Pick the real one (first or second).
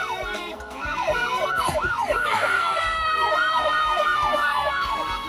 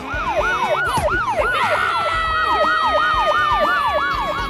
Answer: second